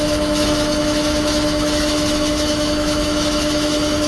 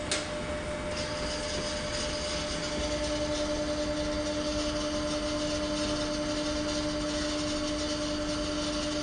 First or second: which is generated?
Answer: first